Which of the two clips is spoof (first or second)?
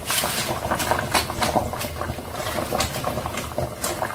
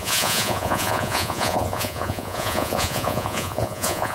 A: second